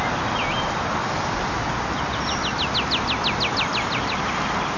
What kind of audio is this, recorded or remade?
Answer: recorded